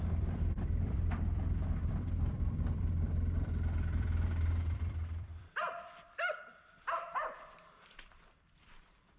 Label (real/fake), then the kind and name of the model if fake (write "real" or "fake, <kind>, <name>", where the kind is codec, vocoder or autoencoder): fake, vocoder, BigVGAN v2